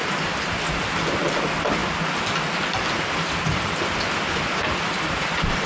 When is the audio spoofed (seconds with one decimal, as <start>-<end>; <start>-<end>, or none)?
none